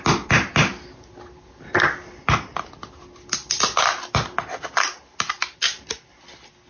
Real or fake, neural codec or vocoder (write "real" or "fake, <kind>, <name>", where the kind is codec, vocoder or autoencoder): real